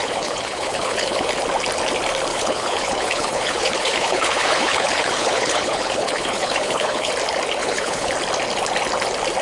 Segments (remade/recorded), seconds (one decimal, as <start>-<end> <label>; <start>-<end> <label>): 0.0-1.3 remade; 1.3-2.3 recorded; 2.3-7.1 remade; 7.1-7.6 recorded; 7.6-8.1 remade; 8.1-9.4 recorded